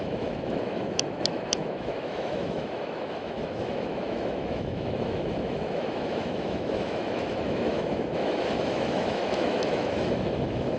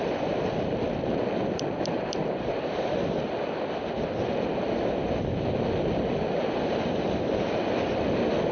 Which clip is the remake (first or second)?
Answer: first